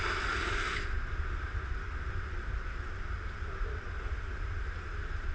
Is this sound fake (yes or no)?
no